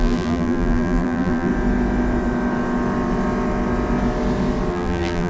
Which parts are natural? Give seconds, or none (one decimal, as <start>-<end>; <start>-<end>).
1.5-4.7